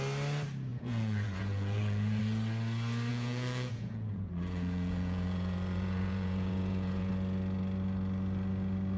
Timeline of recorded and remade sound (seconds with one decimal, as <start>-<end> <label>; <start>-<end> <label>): 0.0-0.7 recorded; 0.7-2.2 remade; 2.2-3.1 recorded; 3.1-7.1 remade; 7.1-9.0 recorded